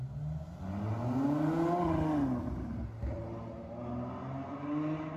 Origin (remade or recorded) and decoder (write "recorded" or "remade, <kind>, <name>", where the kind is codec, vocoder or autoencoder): recorded